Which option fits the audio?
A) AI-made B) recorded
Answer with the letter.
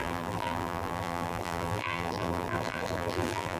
A